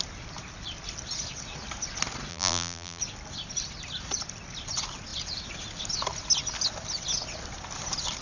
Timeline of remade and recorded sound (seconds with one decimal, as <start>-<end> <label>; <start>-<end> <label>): 0.0-2.3 recorded; 2.3-3.0 remade; 3.0-8.2 recorded